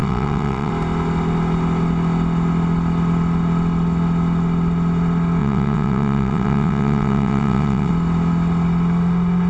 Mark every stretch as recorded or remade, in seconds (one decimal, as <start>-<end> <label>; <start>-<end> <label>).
0.0-0.7 remade; 0.7-5.4 recorded; 5.4-7.9 remade; 7.9-9.5 recorded